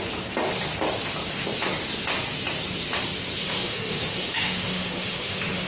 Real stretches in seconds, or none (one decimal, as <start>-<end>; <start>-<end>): 0.0-3.4